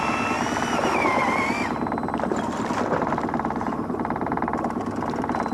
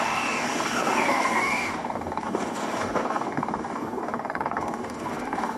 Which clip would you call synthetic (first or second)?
second